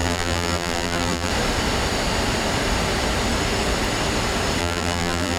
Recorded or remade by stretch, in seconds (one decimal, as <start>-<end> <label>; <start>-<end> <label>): 0.0-1.3 remade; 1.3-4.6 recorded; 4.6-5.4 remade